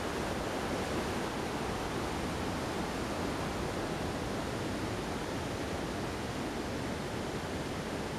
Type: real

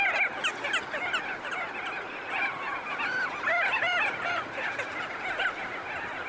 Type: real